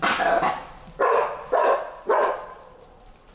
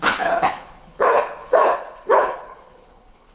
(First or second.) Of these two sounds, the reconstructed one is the second